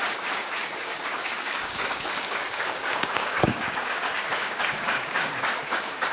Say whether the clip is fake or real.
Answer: fake